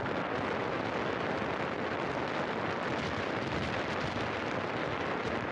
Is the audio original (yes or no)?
yes